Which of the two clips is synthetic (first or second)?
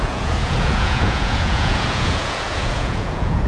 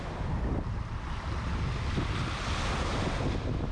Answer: first